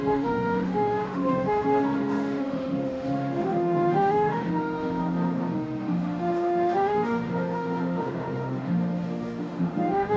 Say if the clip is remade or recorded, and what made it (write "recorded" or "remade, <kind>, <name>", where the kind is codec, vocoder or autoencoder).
remade, autoencoder, DAC-VAE